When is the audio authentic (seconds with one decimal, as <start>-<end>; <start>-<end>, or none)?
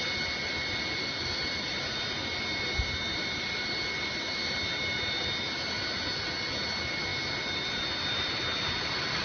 0.0-9.2